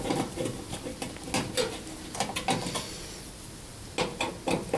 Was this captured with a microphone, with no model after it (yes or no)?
yes